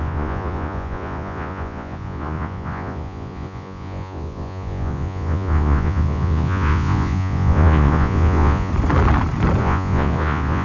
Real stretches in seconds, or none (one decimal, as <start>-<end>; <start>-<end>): 8.7-9.6